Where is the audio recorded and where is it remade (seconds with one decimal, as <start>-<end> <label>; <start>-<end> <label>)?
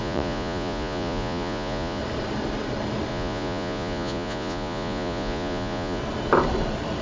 0.0-2.0 remade; 2.0-3.1 recorded; 3.1-6.0 remade; 6.0-7.0 recorded